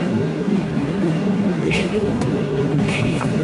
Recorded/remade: remade